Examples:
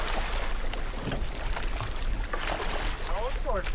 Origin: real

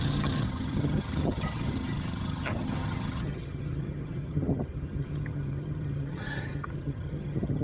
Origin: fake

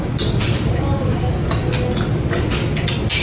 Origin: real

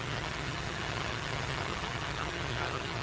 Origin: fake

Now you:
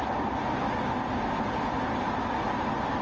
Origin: real